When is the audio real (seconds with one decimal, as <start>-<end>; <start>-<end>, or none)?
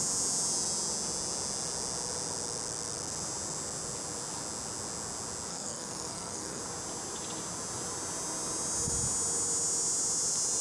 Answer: 0.0-5.5; 6.6-10.6